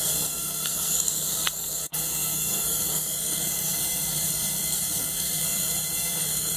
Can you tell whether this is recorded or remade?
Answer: remade